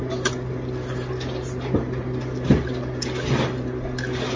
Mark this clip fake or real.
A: real